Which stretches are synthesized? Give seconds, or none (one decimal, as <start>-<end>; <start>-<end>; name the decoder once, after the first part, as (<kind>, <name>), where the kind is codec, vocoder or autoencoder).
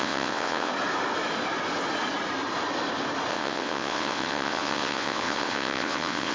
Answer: 0.0-0.7 (vocoder, WaveNeXt); 3.3-6.3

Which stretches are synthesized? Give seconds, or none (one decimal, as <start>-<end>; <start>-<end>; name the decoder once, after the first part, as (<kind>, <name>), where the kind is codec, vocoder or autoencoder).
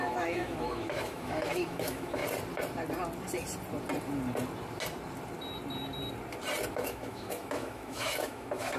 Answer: 0.0-2.2 (autoencoder, DAC-VAE); 6.7-8.8